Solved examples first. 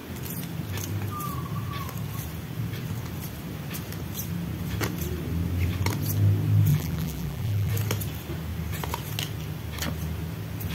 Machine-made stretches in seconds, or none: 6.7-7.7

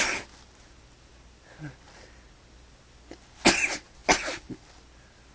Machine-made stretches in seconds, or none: none

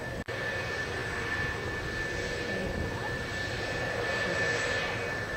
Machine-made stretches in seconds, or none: none

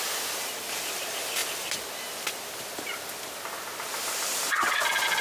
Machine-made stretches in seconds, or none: none

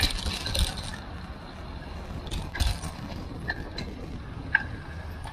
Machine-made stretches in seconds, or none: none

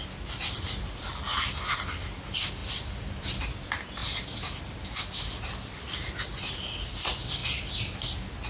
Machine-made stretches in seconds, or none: 0.0-1.1; 1.9-4.0; 6.5-7.4